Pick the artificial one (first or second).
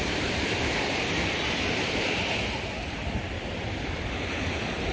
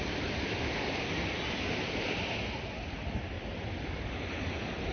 first